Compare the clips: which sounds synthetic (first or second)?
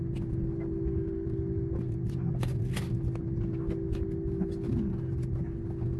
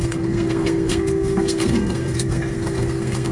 second